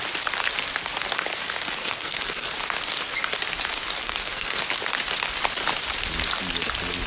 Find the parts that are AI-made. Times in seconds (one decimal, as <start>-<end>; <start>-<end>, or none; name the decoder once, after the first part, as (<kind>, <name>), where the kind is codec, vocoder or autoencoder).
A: 1.8-2.5 (codec, SNAC); 4.0-4.6